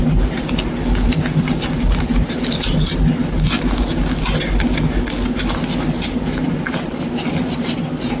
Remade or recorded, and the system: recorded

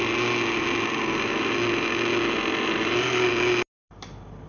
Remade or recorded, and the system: recorded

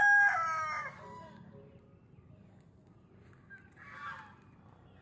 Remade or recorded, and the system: recorded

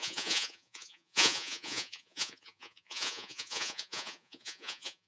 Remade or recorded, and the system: remade, vocoder, Vocos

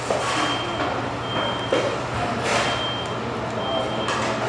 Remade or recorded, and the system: recorded